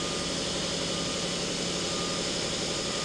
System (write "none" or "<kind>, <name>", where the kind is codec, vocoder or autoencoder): none